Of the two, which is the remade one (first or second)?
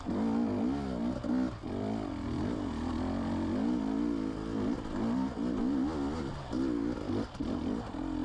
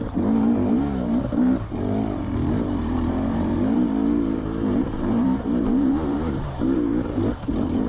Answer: second